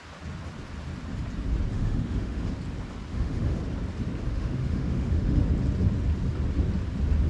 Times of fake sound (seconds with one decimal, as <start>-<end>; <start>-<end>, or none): 1.7-2.5; 3.1-3.6; 4.3-5.4